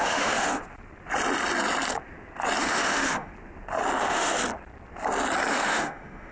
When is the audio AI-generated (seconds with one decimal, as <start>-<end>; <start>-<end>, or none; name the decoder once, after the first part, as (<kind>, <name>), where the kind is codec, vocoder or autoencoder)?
0.0-0.6 (autoencoder, DAC-VAE); 2.6-3.3; 4.0-4.4; 5.5-6.3